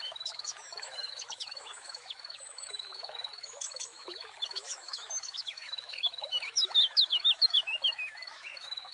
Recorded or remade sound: remade